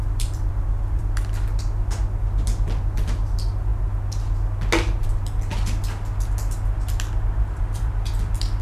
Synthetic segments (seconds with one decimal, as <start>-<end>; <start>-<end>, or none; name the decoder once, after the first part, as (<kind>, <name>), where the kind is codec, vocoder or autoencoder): 0.0-1.0 (vocoder, BigVGAN v2); 2.0-3.7; 7.4-8.6